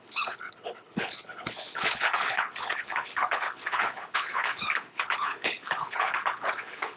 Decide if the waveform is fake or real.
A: fake